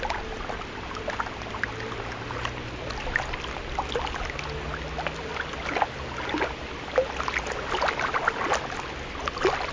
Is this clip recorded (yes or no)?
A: yes